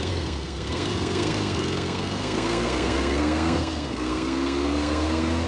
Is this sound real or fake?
fake